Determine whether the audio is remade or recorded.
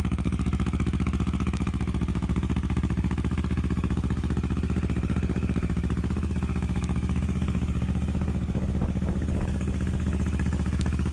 remade